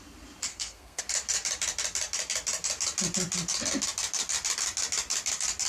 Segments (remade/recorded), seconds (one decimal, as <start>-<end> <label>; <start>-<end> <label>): 0.0-0.5 recorded; 0.5-1.0 remade; 1.0-5.7 recorded